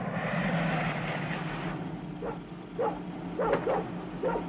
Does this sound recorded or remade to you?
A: recorded